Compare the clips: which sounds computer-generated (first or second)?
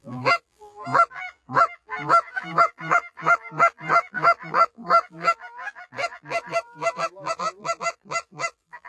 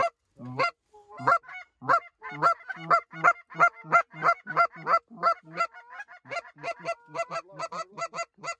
first